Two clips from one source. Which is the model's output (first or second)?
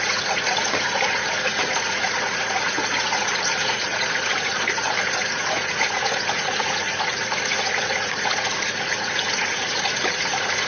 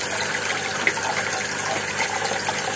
first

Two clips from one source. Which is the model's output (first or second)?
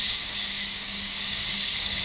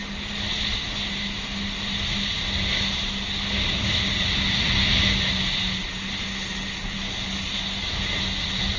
first